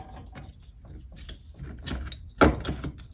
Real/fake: real